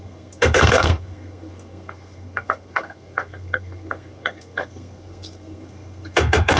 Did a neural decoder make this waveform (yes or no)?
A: yes